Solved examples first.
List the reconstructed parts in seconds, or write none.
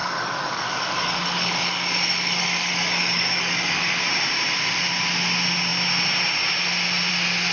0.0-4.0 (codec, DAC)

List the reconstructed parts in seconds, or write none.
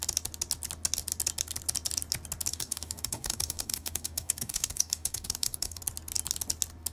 2.5-5.8 (codec, DAC)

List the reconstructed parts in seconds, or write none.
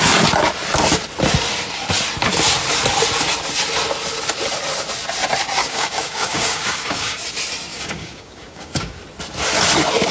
5.6-7.2 (codec, DAC); 7.7-9.0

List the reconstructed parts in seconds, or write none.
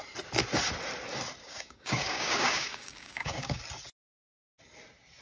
1.4-3.6 (codec, DAC)